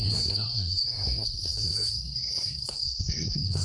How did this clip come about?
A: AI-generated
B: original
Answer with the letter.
A